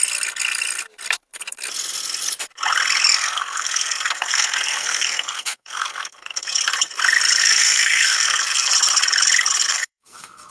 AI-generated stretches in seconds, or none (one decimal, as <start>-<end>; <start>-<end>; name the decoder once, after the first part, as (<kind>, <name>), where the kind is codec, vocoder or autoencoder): 3.1-6.5 (codec, SNAC); 7.4-8.7; 9.7-10.5